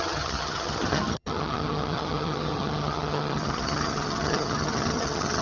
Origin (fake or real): fake